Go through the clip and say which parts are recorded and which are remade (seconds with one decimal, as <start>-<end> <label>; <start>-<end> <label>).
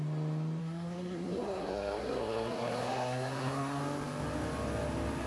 0.0-0.6 recorded; 0.6-3.8 remade; 3.8-5.3 recorded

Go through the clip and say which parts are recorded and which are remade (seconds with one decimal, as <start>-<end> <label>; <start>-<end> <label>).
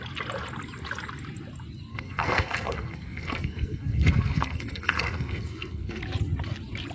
0.0-1.9 recorded; 1.9-6.0 remade; 6.0-6.9 recorded